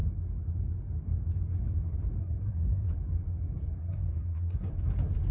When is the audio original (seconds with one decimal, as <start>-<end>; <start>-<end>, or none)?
0.0-2.2; 2.9-3.8; 4.7-5.3

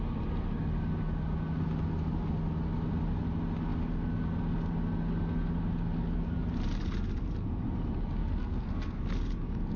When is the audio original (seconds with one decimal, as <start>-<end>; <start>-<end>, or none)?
0.0-8.2; 9.0-9.8

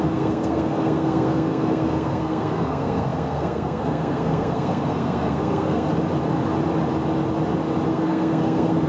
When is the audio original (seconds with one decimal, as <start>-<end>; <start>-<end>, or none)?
5.9-7.9

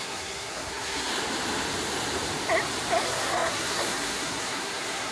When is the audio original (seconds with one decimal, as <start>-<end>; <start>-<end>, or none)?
1.1-3.0

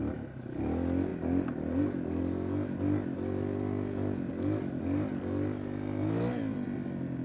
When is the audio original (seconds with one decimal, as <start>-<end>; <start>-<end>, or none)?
0.0-7.2

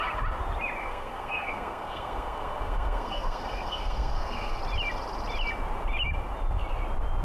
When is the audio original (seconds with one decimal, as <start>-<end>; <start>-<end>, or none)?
0.0-0.8; 4.6-7.2